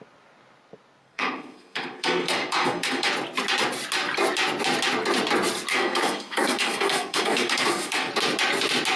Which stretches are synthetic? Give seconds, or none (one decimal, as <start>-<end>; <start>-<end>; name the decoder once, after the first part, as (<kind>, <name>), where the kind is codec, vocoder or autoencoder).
1.0-3.1 (codec, SNAC); 5.7-8.1